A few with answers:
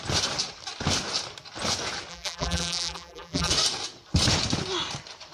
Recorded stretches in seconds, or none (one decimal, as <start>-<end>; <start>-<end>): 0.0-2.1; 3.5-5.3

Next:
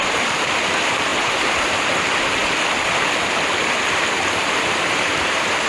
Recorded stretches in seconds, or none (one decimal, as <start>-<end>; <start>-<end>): 0.0-5.7

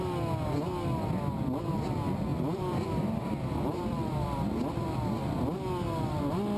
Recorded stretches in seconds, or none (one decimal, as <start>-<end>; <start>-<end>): 0.0-2.3; 5.2-6.6

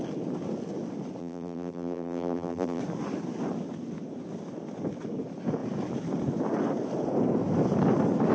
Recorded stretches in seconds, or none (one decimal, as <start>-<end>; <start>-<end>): 0.0-1.2; 2.8-8.3

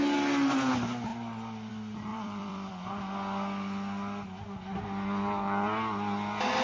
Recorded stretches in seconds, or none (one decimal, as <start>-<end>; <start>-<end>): 0.0-2.1; 2.7-6.6

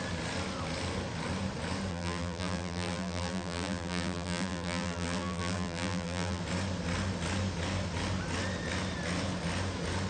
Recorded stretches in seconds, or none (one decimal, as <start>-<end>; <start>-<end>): 0.0-1.9; 6.4-10.1

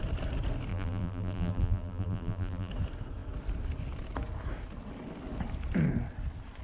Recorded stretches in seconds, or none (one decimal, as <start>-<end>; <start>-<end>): 0.0-0.7; 2.7-6.6